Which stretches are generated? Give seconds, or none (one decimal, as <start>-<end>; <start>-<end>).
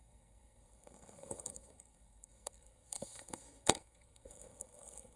0.0-5.2